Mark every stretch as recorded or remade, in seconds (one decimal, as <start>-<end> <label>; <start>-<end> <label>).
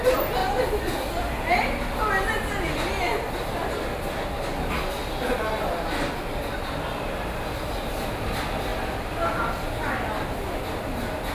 0.0-11.3 recorded